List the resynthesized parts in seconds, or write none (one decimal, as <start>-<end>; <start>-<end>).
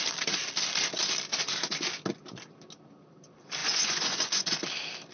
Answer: 3.6-4.6